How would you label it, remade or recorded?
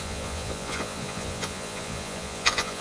remade